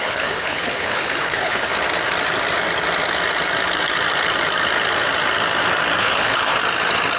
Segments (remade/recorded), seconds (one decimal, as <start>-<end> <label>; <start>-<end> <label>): 0.0-1.7 remade; 1.7-6.0 recorded; 6.0-6.5 remade; 6.5-7.2 recorded